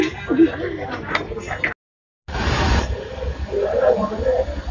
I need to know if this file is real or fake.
real